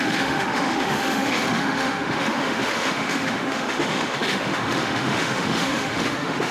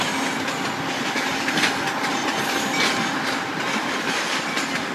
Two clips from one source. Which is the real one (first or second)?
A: second